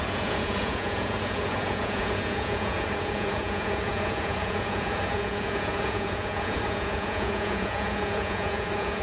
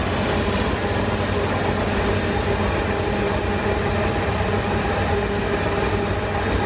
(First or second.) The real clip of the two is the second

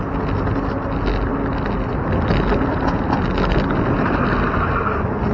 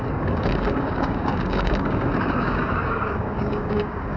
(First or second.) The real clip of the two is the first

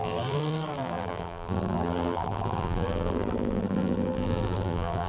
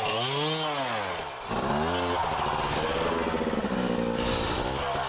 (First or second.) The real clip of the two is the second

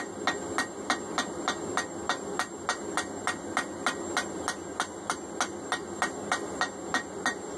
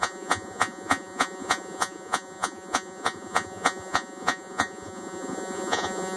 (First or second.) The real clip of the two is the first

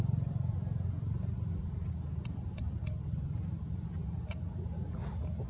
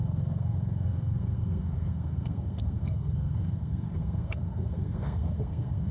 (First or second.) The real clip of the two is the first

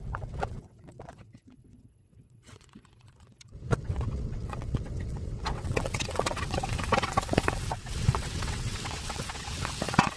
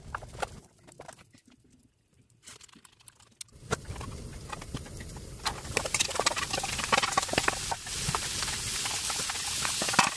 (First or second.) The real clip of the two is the second